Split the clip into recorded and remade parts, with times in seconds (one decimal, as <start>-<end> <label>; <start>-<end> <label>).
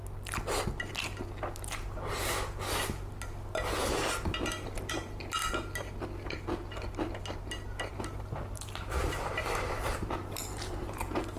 0.0-4.9 recorded; 4.9-5.4 remade; 5.4-7.9 recorded; 7.9-11.4 remade